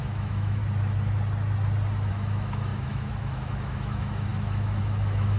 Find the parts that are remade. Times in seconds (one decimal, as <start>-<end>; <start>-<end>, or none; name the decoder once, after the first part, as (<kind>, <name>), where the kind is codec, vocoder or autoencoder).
0.0-0.6 (autoencoder, DAC-VAE); 2.1-5.4